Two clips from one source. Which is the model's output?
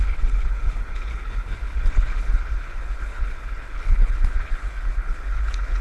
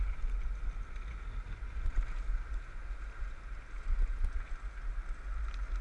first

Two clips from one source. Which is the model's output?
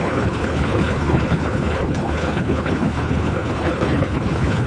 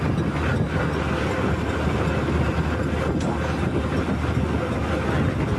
first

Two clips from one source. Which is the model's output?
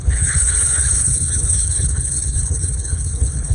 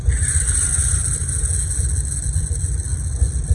first